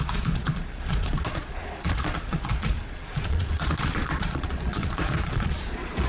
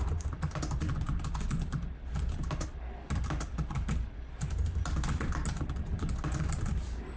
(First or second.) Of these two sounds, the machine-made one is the first